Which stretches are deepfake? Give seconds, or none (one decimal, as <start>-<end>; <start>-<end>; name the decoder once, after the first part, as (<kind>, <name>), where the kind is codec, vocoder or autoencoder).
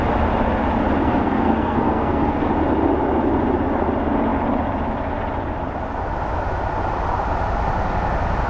1.0-2.5 (codec, SNAC)